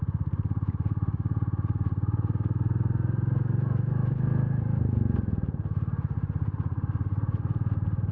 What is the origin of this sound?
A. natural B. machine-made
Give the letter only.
B